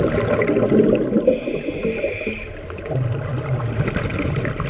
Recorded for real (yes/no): yes